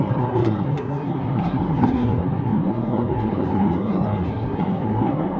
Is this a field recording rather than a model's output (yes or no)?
no